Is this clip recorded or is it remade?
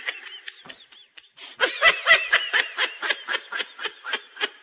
remade